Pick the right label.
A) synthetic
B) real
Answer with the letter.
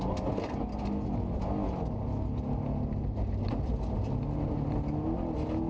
B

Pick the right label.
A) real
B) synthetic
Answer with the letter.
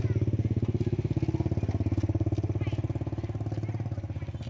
A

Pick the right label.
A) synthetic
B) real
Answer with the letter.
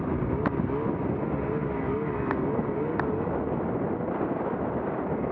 B